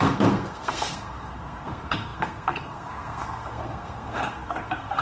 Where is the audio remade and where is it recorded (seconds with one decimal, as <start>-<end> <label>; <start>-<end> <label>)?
0.0-5.0 remade